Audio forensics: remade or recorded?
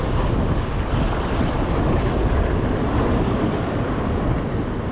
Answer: recorded